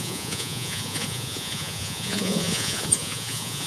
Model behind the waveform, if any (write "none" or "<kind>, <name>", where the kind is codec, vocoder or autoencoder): vocoder, Vocos